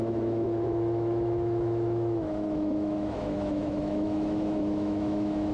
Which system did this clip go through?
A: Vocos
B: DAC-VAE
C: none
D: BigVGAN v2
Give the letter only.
B